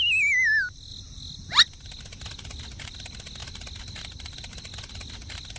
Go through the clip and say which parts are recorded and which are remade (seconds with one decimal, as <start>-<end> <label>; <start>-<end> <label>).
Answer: 0.0-5.6 recorded